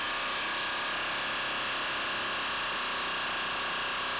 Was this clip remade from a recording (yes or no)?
no